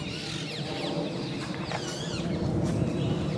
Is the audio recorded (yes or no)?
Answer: yes